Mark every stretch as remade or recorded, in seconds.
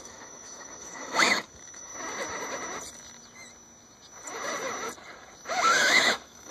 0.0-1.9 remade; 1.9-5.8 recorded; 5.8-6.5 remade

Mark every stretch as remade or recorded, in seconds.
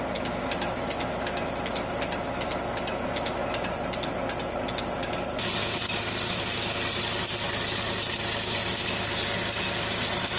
0.0-10.4 recorded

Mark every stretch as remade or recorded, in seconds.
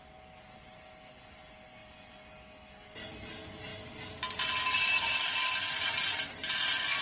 0.0-7.0 recorded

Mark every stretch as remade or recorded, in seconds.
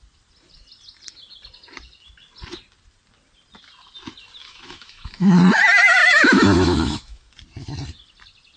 0.0-4.4 recorded; 4.4-5.4 remade; 5.4-6.0 recorded; 6.0-7.3 remade; 7.3-8.6 recorded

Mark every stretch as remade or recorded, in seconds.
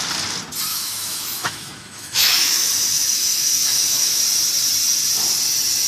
0.0-0.7 recorded; 0.7-4.2 remade; 4.2-5.9 recorded